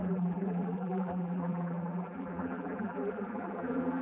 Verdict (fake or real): fake